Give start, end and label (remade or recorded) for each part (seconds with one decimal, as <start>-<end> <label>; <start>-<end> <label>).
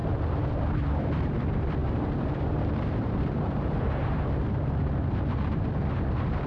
0.0-0.7 recorded; 0.7-6.5 remade